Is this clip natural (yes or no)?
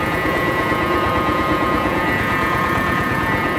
no